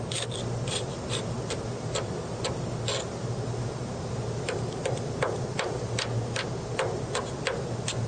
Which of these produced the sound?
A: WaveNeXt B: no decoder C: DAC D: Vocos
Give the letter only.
B